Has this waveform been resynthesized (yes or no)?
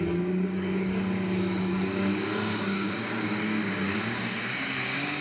yes